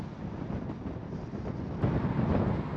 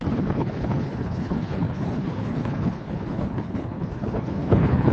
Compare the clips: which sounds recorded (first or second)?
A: first